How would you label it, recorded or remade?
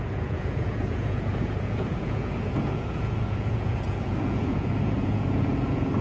remade